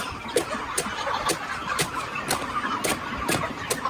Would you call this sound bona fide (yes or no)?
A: yes